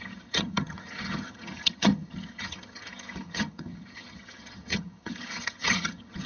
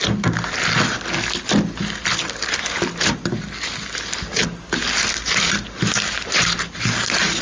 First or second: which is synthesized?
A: first